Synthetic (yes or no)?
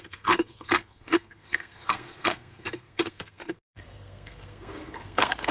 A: yes